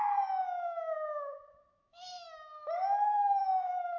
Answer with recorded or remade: remade